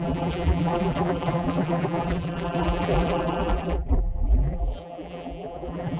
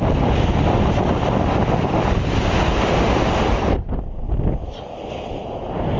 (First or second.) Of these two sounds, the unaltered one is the second